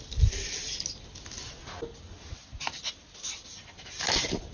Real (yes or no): yes